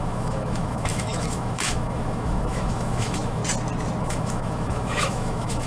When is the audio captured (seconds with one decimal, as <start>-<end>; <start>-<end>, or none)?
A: 3.4-4.0